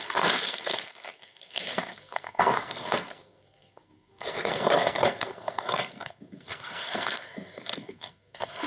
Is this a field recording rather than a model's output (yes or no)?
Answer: no